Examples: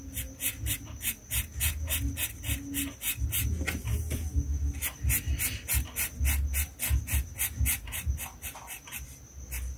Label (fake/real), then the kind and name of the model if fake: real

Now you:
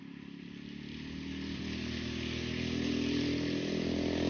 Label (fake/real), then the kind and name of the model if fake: real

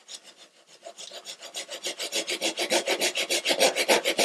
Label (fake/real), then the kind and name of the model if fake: real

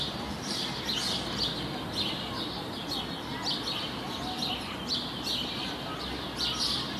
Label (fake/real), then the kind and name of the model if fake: real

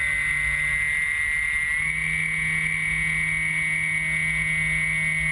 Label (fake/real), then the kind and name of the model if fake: real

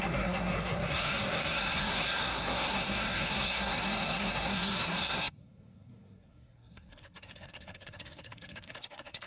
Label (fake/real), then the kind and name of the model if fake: fake, codec, SNAC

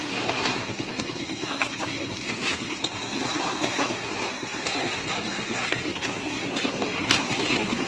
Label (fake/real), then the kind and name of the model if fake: fake, codec, SNAC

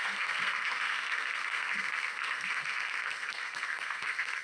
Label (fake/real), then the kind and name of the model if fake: fake, codec, SNAC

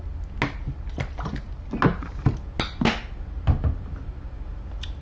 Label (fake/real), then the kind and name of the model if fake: real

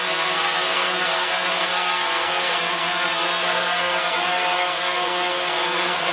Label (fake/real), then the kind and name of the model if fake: fake, codec, SNAC